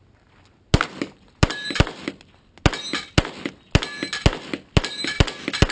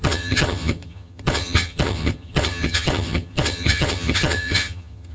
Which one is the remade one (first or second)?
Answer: second